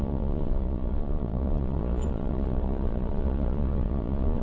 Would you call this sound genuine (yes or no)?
no